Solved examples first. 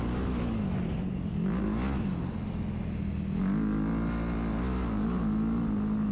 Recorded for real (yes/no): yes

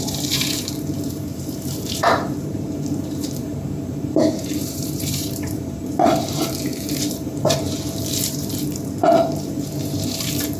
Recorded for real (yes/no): no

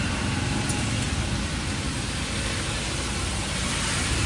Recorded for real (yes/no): yes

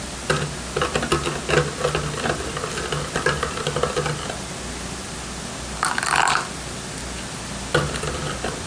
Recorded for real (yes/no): yes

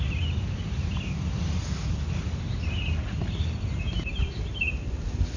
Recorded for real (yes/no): yes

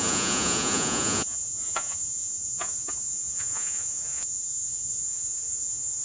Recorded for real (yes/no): no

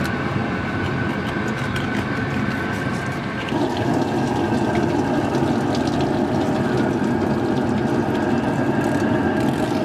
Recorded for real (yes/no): yes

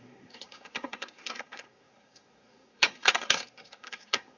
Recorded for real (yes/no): no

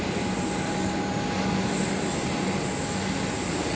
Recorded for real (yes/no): yes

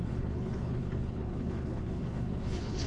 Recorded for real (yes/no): no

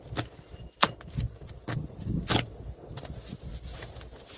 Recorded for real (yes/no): yes